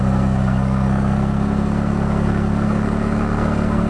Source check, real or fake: fake